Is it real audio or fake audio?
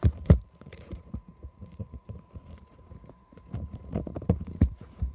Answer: fake